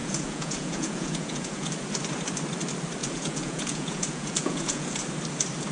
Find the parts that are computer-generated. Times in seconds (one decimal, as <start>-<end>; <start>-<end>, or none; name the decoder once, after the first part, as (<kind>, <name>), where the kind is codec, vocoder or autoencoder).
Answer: 0.0-1.7 (vocoder, Vocos); 3.0-5.0